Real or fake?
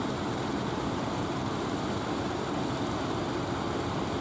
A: real